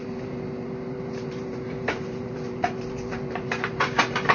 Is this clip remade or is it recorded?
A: remade